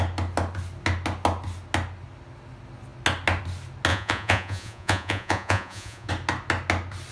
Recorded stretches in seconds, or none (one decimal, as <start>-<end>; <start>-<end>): 0.0-3.9; 6.1-7.1